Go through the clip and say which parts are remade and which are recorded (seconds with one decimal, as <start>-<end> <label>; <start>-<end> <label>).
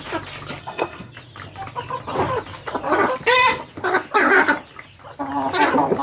0.0-0.6 recorded; 0.6-1.1 remade; 1.1-6.0 recorded